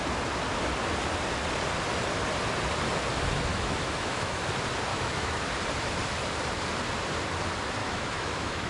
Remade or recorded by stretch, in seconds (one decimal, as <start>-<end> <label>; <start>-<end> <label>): 0.0-3.5 recorded; 3.5-4.4 remade; 4.4-4.9 recorded; 4.9-5.4 remade; 5.4-7.8 recorded; 7.8-8.7 remade